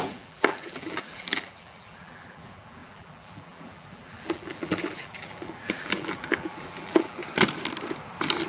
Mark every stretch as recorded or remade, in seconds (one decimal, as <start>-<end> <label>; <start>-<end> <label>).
0.0-7.2 remade; 7.2-8.5 recorded